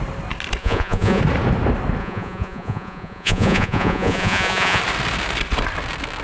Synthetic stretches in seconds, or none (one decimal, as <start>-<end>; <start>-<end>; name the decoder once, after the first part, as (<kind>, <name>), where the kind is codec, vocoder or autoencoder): 0.6-1.2 (vocoder, Vocos); 2.0-4.8